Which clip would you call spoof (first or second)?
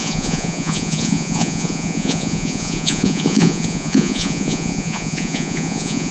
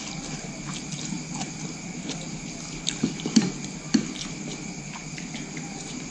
first